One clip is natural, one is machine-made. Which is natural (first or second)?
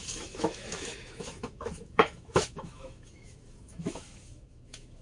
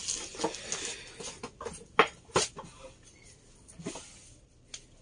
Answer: second